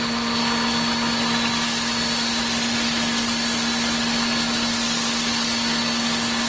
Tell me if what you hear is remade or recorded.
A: recorded